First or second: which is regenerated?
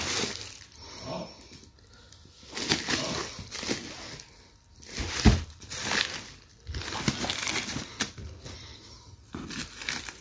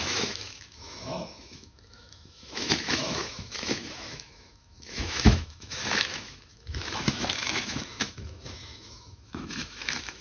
second